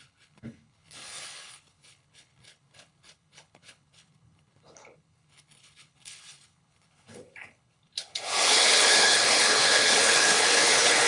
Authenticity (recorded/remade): remade